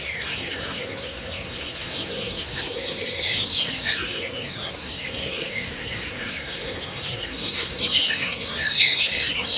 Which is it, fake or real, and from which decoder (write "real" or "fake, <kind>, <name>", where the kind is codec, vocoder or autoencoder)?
fake, codec, SNAC